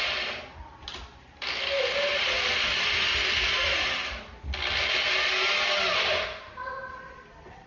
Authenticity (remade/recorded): recorded